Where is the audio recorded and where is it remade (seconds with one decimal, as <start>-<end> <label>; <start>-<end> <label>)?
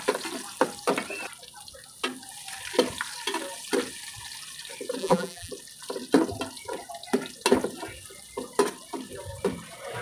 0.0-5.0 recorded; 5.0-5.5 remade; 5.5-10.0 recorded